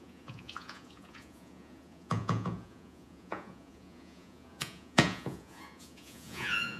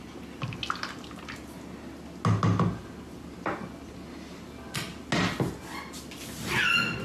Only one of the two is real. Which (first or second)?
second